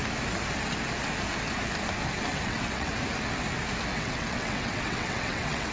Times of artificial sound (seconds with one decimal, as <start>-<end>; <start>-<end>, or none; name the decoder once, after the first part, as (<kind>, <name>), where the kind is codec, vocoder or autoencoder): 2.3-2.9 (vocoder, WaveNeXt); 3.9-5.7